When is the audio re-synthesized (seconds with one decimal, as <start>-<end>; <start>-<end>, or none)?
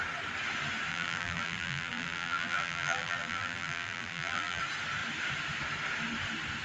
0.9-4.6